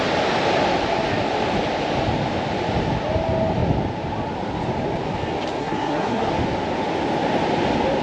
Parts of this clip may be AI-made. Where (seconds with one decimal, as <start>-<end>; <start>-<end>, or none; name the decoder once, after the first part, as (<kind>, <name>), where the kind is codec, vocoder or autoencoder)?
5.6-6.3 (codec, SNAC)